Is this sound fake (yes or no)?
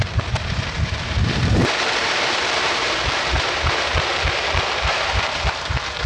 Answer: yes